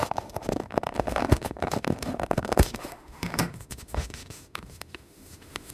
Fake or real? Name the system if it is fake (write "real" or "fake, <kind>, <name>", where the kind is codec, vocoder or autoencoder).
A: fake, autoencoder, DAC-VAE